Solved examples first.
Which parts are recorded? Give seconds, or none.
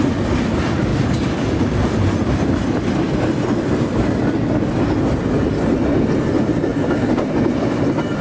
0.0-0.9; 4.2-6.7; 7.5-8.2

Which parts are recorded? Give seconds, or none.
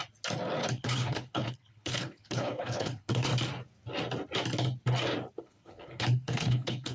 0.0-0.7; 3.3-5.4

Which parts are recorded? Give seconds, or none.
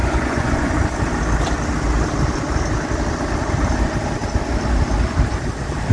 0.7-5.9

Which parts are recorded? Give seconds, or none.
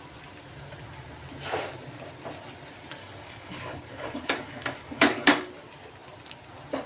0.0-3.0; 5.5-6.9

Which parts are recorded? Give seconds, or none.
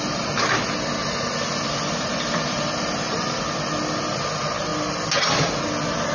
0.0-1.0; 3.4-6.1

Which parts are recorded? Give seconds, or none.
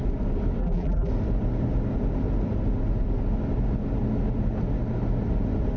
0.0-0.6; 1.1-5.8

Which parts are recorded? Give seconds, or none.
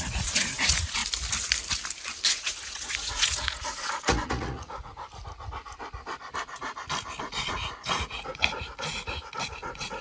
1.0-2.3; 4.9-7.2